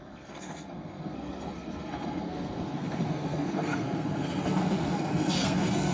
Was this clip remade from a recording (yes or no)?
yes